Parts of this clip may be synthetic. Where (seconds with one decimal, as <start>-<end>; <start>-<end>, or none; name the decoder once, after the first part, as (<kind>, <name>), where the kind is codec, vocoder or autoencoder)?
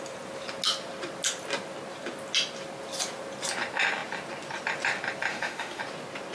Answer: 5.3-5.8 (autoencoder, DAC-VAE)